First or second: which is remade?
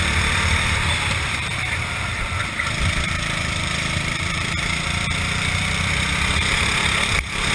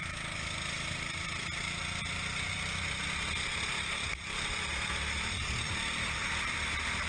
first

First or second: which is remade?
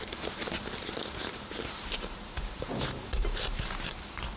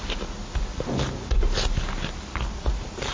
first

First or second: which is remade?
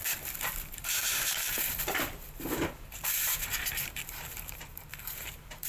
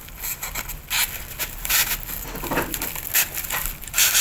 first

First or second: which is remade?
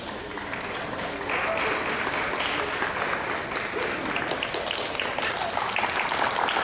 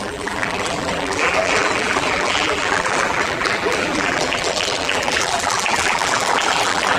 second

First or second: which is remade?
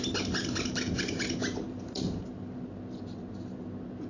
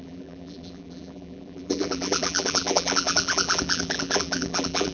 second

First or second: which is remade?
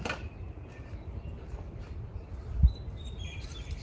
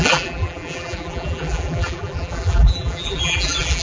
second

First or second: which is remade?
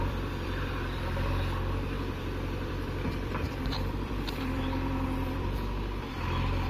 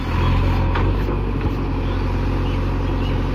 first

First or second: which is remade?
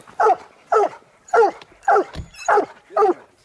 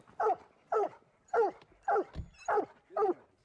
first